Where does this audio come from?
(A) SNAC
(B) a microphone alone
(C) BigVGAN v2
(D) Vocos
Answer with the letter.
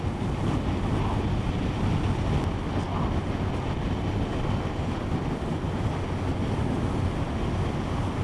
B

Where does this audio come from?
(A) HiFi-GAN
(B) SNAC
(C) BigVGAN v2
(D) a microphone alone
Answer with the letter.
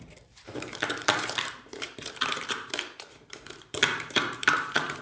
C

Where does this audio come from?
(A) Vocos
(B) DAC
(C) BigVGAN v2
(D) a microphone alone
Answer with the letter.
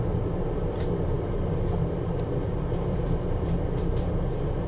C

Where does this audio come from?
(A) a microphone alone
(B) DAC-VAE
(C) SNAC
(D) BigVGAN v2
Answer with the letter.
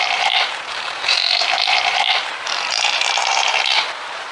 D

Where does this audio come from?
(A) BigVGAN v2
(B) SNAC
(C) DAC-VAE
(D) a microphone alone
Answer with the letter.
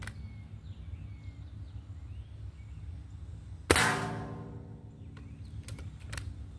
D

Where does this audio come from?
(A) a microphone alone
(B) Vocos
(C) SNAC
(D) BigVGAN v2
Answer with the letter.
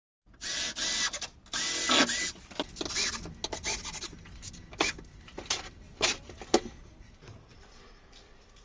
A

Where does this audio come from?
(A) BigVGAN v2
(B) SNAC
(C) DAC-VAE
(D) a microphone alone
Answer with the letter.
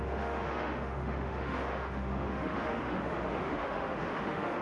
C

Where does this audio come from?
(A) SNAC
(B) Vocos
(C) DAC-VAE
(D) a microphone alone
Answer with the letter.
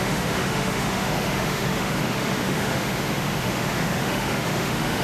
C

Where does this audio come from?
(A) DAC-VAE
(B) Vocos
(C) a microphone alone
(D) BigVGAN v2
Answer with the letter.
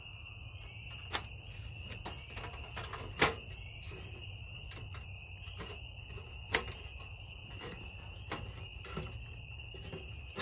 C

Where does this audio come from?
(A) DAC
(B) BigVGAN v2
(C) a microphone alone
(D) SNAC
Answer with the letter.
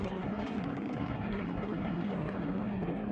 D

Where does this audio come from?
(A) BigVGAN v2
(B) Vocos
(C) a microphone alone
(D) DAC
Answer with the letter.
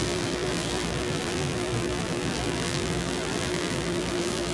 A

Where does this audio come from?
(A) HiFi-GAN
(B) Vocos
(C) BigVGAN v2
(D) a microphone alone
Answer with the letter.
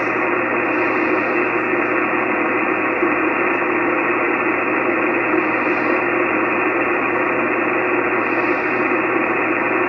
D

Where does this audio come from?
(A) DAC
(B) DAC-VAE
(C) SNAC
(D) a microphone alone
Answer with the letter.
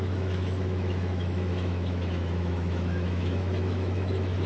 B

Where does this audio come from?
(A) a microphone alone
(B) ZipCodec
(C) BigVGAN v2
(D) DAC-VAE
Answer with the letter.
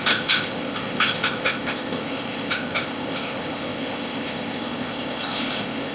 B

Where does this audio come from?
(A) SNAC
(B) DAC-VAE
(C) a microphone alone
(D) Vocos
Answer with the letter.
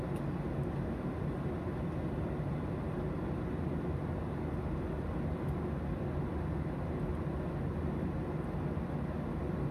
C